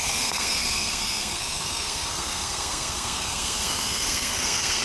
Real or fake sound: fake